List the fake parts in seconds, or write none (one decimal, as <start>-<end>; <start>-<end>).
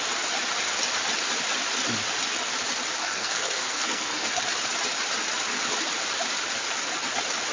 3.0-4.3